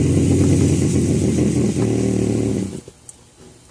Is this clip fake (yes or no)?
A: no